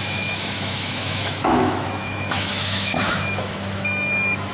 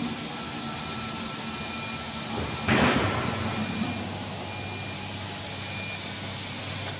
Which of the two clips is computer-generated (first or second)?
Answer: first